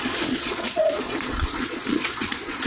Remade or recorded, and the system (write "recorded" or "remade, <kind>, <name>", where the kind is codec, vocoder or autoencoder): remade, vocoder, Vocos